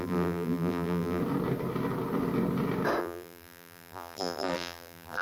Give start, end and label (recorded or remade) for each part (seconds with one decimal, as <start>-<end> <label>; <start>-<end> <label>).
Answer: 0.0-1.2 remade; 1.2-3.0 recorded; 3.0-5.2 remade